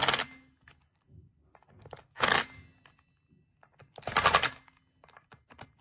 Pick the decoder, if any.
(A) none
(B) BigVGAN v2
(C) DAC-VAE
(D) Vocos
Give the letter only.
A